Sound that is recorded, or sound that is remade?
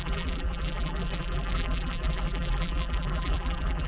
remade